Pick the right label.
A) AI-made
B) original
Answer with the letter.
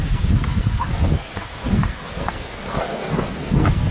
A